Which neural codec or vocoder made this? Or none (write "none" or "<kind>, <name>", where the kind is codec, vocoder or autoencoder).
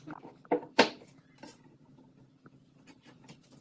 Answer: vocoder, BigVGAN v2